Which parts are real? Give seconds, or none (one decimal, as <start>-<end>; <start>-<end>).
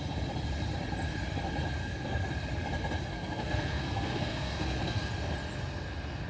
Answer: 0.0-1.8; 2.3-3.1; 5.0-6.3